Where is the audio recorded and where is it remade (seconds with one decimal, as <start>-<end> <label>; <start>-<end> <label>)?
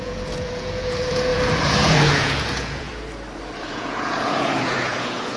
0.0-2.9 remade; 2.9-3.6 recorded; 3.6-5.4 remade